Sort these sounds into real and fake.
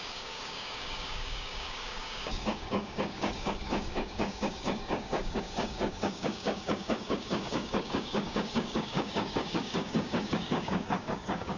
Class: fake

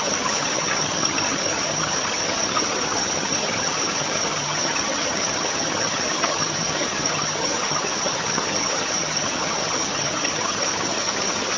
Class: fake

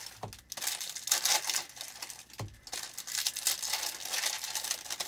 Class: real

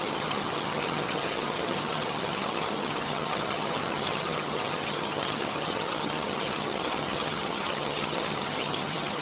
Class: fake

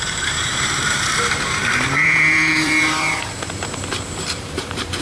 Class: fake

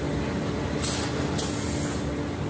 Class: real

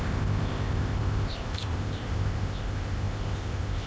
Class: fake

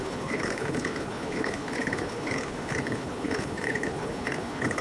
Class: fake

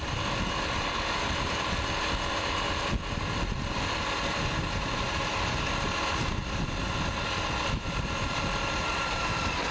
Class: real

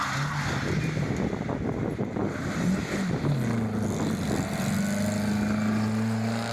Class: real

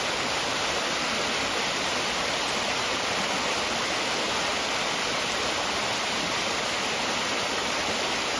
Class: real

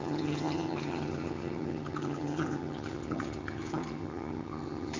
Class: fake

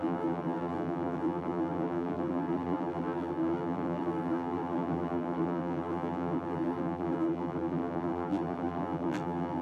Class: fake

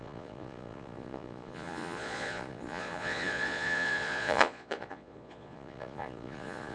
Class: fake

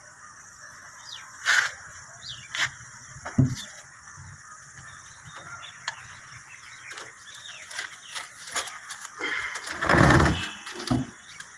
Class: fake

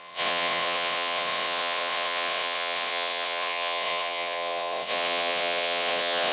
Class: fake